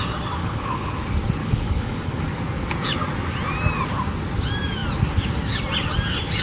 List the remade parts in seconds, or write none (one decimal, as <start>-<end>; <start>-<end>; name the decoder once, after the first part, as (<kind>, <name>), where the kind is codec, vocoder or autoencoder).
0.4-0.9 (codec, HILCodec); 1.4-2.2